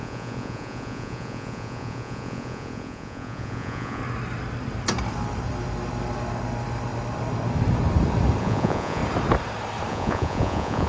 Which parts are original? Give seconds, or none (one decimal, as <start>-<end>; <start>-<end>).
4.0-8.4; 9.0-9.9